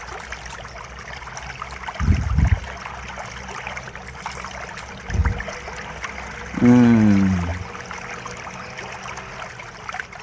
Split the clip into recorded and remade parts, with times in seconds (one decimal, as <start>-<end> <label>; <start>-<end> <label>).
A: 0.0-10.2 recorded